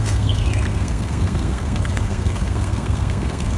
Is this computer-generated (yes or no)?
yes